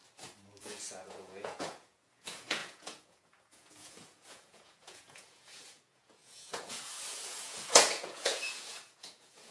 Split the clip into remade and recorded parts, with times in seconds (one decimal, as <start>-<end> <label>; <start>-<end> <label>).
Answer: 0.0-0.6 recorded; 0.6-9.5 remade

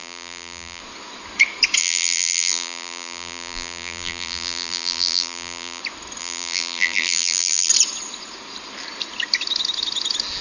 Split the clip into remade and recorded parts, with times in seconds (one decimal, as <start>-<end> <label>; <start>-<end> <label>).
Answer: 0.0-0.8 remade; 0.8-1.8 recorded; 1.8-5.8 remade; 5.8-6.2 recorded; 6.2-7.7 remade; 7.7-10.4 recorded